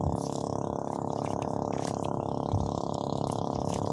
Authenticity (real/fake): fake